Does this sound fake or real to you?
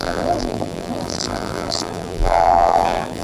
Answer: fake